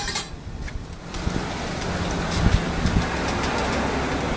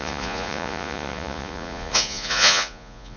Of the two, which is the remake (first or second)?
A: second